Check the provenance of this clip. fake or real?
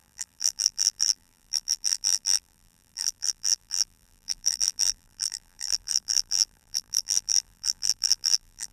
fake